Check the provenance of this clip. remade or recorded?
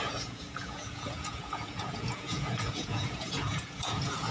remade